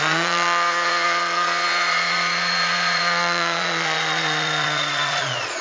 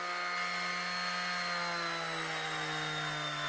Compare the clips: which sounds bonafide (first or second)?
second